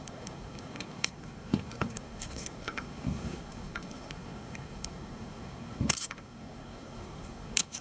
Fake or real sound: fake